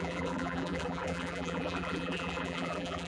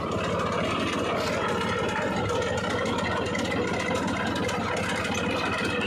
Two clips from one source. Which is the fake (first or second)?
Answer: first